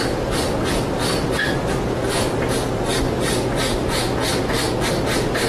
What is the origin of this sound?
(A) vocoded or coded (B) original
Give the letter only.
B